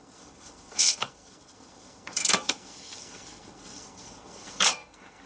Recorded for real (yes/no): no